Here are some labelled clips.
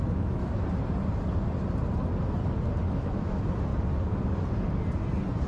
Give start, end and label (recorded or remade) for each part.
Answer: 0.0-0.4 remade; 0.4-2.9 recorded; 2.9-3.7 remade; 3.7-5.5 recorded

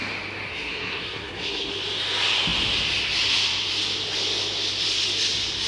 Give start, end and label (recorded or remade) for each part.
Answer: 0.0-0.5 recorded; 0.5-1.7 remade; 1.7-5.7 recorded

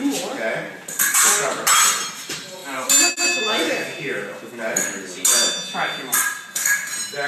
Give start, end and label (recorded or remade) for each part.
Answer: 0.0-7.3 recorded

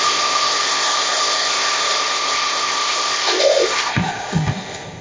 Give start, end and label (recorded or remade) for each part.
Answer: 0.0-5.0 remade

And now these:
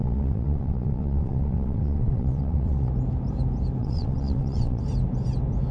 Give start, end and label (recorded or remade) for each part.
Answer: 0.0-2.9 remade; 2.9-3.8 recorded; 3.8-4.8 remade; 4.8-5.7 recorded

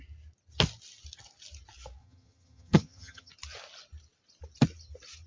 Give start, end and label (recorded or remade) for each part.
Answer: 0.0-2.0 recorded; 2.0-3.3 remade; 3.3-5.3 recorded